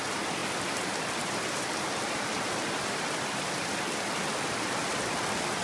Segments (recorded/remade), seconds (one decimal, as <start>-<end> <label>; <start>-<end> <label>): 0.0-0.4 recorded; 0.4-3.8 remade; 3.8-5.6 recorded